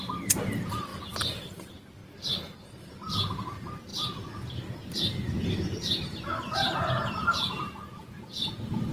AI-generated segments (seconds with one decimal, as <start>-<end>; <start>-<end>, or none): 0.0-0.9; 1.5-2.0; 2.6-8.9